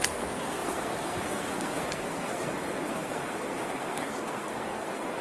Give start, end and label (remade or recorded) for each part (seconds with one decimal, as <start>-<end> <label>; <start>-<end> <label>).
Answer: 0.0-5.2 remade